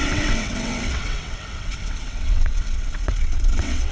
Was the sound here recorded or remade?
remade